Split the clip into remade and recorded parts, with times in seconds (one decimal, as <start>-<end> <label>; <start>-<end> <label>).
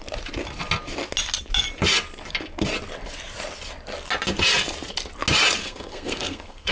0.0-5.6 recorded; 5.6-6.7 remade